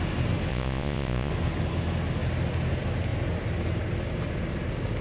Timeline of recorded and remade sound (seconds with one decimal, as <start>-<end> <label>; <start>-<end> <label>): 0.0-0.5 recorded; 0.5-1.3 remade; 1.3-5.0 recorded